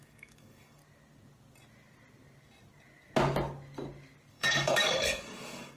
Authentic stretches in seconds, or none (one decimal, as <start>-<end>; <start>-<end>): 0.8-4.3